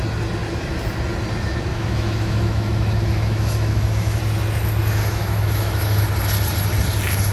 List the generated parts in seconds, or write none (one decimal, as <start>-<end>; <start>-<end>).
1.7-4.2; 5.0-6.0